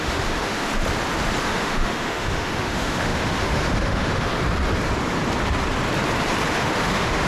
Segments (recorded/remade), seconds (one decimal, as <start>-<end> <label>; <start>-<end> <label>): 0.0-0.7 remade; 0.7-1.4 recorded; 1.4-4.3 remade; 4.3-6.6 recorded; 6.6-7.3 remade